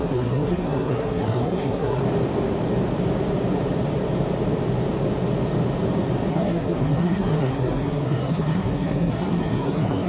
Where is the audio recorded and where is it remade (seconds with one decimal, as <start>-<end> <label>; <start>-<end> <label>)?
0.0-2.0 remade; 2.0-6.3 recorded; 6.3-10.1 remade